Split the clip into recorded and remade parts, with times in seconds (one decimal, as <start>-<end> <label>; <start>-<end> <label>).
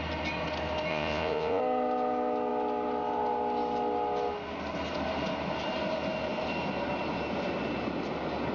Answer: 0.0-0.9 recorded; 0.9-1.6 remade; 1.6-8.5 recorded